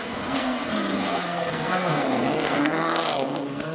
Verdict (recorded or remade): remade